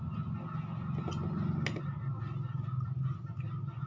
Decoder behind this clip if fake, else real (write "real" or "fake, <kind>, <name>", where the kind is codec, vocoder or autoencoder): real